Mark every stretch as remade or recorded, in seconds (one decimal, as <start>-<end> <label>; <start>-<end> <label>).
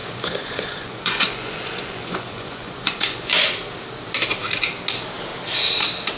0.0-3.3 remade; 3.3-6.2 recorded